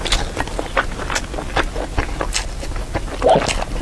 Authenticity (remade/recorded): recorded